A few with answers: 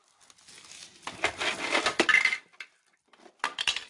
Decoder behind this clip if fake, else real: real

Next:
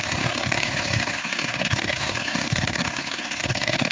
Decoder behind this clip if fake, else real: fake, codec, SNAC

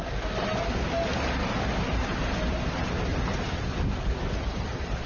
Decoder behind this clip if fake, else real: real